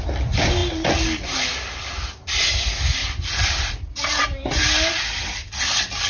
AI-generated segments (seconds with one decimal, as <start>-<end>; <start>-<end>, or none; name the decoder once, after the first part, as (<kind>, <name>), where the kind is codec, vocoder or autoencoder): none